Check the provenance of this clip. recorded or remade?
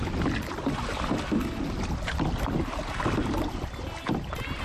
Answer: recorded